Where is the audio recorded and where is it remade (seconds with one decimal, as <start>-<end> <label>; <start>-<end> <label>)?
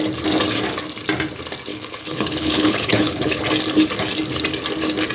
0.0-1.7 recorded; 1.7-3.4 remade; 3.4-5.1 recorded